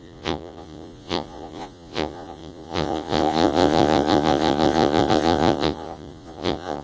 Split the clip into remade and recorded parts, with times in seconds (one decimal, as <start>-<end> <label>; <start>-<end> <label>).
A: 0.0-6.8 remade